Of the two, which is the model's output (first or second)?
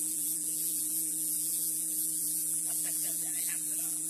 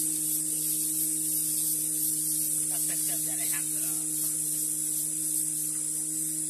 first